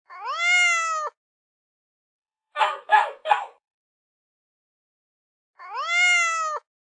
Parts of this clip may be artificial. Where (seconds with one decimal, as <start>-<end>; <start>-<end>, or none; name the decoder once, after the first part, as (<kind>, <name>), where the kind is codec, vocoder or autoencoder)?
1.8-5.2 (codec, SNAC)